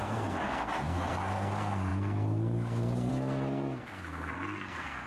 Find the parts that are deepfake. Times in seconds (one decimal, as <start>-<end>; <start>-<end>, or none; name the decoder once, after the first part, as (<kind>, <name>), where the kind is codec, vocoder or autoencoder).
0.0-5.1 (codec, SNAC)